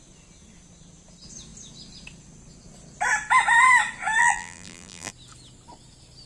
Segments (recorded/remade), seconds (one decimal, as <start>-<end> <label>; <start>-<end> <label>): 0.0-4.2 recorded; 4.2-5.1 remade; 5.1-6.3 recorded